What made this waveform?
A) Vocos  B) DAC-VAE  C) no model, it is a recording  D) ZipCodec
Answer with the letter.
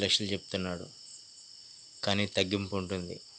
C